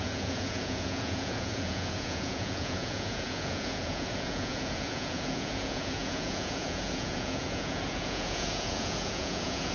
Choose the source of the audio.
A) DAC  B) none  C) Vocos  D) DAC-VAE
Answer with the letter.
C